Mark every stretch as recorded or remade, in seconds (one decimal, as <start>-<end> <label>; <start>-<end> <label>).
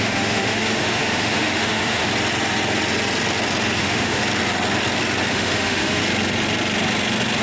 0.0-2.0 remade; 2.0-3.8 recorded; 3.8-4.2 remade; 4.2-5.3 recorded; 5.3-6.0 remade; 6.0-7.4 recorded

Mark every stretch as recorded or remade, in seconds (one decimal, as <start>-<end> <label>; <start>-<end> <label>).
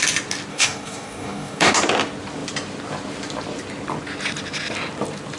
0.0-0.5 recorded; 0.5-1.7 remade; 1.7-5.4 recorded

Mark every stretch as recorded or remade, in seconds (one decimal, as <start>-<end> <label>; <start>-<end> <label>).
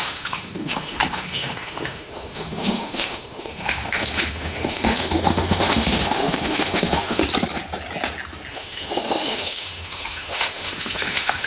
0.0-7.2 remade; 7.2-8.5 recorded; 8.5-11.5 remade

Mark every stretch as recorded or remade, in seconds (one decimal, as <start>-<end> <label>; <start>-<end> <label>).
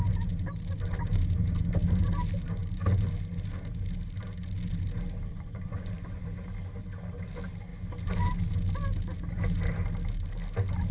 0.0-5.3 recorded; 5.3-5.9 remade; 5.9-10.9 recorded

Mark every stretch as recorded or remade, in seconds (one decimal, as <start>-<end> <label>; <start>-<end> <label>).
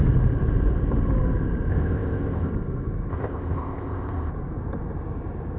0.0-1.7 recorded; 1.7-2.5 remade; 2.5-3.1 recorded; 3.1-4.3 remade; 4.3-5.6 recorded